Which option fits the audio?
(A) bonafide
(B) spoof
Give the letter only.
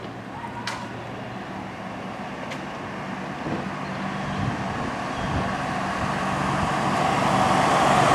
A